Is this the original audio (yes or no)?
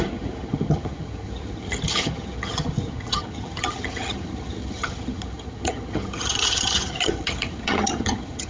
no